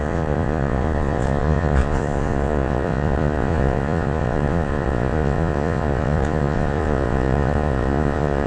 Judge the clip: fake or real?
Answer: fake